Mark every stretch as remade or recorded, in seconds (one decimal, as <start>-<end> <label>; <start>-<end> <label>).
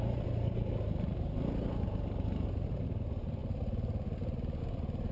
0.0-5.1 recorded